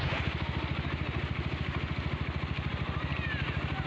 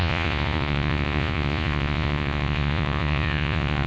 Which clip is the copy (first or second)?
second